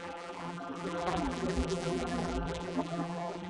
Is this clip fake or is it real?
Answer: fake